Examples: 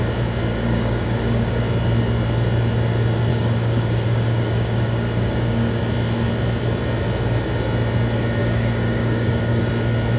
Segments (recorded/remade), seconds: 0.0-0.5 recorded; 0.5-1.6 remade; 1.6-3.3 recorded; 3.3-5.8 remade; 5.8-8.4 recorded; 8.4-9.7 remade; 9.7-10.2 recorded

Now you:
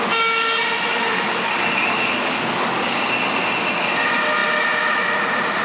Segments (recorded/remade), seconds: 0.0-0.9 recorded; 0.9-3.0 remade; 3.0-5.6 recorded

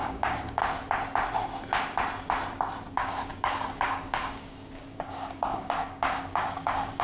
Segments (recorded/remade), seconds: 0.0-0.6 remade; 0.6-2.9 recorded; 2.9-7.0 remade

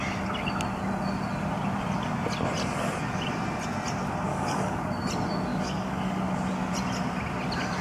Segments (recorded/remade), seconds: 0.0-4.3 recorded; 4.3-4.8 remade; 4.8-5.5 recorded; 5.5-6.3 remade; 6.3-7.8 recorded

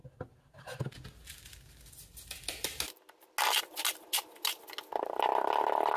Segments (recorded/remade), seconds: 0.0-6.0 recorded

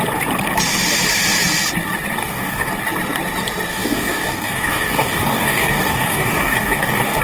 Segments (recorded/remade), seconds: 0.0-2.2 recorded; 2.2-2.7 remade; 2.7-3.7 recorded; 3.7-7.2 remade